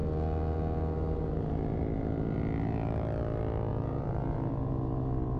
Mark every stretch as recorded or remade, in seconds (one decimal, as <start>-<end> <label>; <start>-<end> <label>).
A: 0.0-3.7 recorded; 3.7-4.5 remade; 4.5-5.4 recorded